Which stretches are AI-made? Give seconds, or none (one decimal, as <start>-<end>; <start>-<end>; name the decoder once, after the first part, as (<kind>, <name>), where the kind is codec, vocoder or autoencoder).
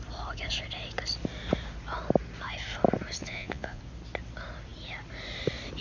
3.2-3.8 (vocoder, Vocos)